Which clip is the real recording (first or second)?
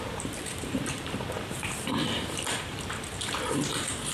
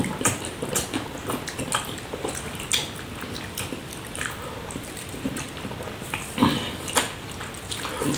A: second